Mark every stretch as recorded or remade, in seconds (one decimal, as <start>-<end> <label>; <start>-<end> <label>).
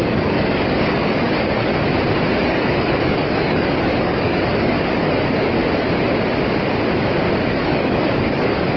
0.0-1.7 remade; 1.7-2.4 recorded; 2.4-5.6 remade; 5.6-7.5 recorded; 7.5-8.8 remade